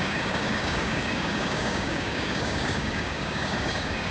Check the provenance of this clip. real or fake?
fake